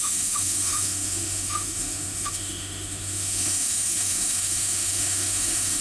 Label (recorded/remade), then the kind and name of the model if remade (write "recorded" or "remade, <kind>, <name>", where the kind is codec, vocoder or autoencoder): remade, autoencoder, DAC-VAE